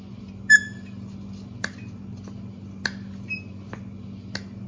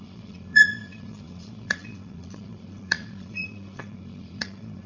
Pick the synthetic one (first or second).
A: second